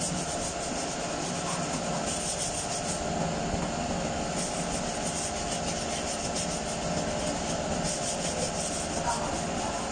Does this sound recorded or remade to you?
recorded